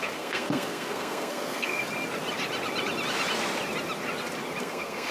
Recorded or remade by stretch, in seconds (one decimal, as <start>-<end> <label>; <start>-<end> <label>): 0.0-1.8 remade; 1.8-4.6 recorded; 4.6-5.1 remade